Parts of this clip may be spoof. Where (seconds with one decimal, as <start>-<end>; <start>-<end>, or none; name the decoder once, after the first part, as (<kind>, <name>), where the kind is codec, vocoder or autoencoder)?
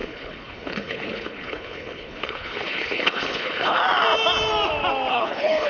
0.0-3.8 (codec, HILCodec); 5.1-5.7